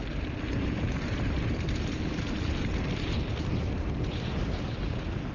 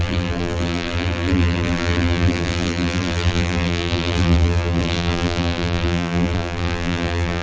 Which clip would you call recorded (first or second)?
first